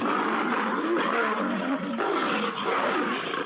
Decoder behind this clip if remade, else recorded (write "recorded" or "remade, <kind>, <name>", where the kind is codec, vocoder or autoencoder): recorded